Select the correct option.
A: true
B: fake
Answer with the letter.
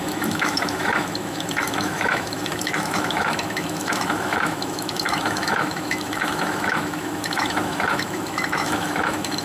B